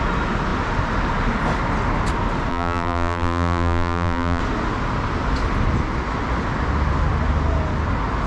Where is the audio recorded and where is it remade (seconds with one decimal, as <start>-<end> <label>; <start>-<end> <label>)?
0.0-2.5 recorded; 2.5-4.4 remade; 4.4-8.3 recorded